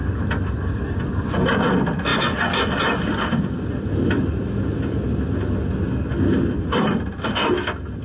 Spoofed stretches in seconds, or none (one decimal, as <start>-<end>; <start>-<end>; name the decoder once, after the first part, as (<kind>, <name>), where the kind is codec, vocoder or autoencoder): none